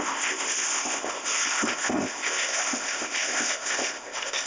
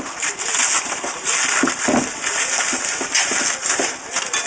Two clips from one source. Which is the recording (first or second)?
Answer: second